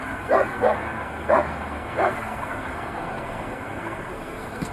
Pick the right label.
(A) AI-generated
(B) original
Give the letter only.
A